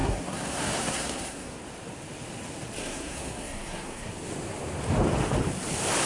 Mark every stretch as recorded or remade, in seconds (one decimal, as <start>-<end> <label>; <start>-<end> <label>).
0.0-1.6 remade; 1.6-2.8 recorded; 2.8-4.1 remade; 4.1-6.1 recorded